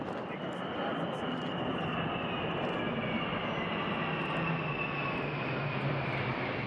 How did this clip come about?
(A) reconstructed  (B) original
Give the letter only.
B